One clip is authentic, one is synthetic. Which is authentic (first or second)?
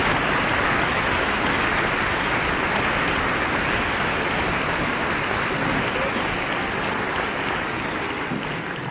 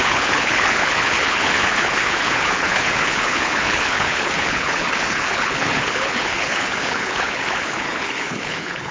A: first